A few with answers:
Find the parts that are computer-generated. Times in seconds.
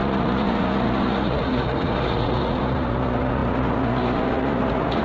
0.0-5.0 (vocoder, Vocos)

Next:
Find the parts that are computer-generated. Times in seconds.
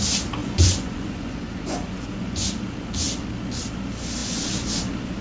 0.4-2.5 (vocoder, Vocos)